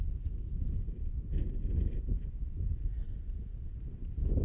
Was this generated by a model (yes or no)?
no